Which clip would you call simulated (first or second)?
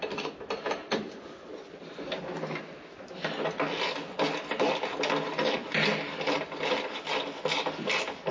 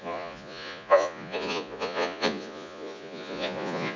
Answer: second